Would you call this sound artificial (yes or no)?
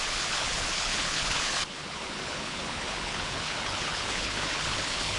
yes